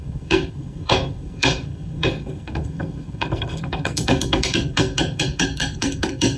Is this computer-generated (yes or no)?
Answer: yes